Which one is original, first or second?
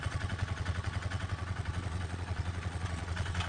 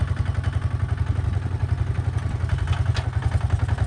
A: second